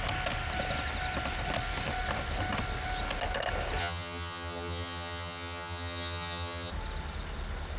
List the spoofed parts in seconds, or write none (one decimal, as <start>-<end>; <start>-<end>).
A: 3.8-6.7